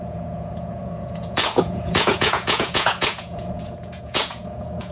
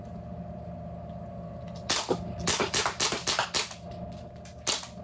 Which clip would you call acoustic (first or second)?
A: second